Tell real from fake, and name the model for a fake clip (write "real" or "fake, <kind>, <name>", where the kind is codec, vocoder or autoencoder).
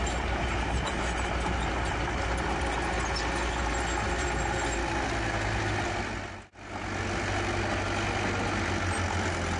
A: real